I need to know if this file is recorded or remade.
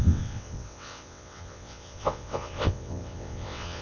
remade